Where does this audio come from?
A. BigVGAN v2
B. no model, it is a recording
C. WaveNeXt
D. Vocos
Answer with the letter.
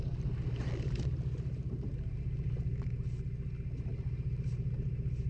B